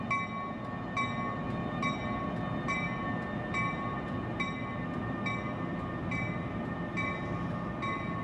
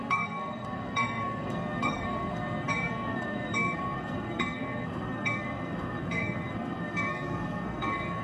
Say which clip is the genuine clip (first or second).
first